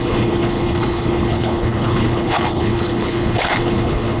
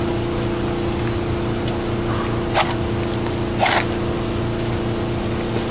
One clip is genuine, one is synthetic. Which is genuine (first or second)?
second